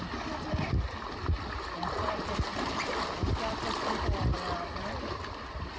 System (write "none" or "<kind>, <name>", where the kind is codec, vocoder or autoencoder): none